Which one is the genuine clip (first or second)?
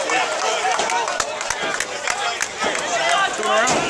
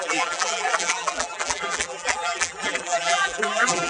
first